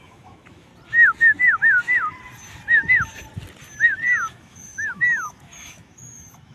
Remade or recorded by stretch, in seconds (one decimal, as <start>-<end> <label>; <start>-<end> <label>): 0.0-0.7 remade; 0.7-4.3 recorded; 4.3-6.5 remade